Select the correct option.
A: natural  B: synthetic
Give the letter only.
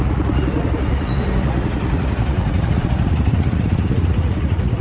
B